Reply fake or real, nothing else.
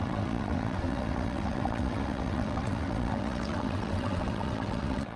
fake